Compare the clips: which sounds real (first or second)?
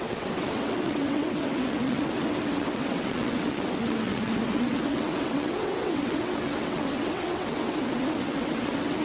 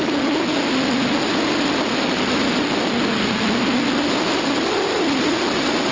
second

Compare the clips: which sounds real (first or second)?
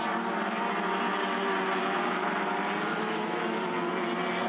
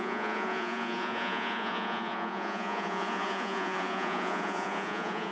first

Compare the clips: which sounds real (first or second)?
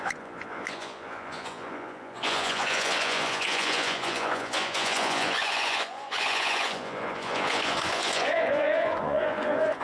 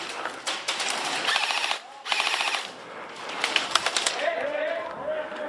second